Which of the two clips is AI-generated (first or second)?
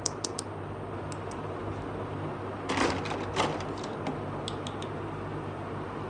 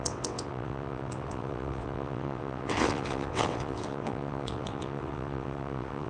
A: second